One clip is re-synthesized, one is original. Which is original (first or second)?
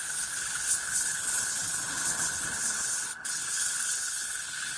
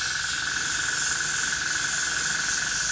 second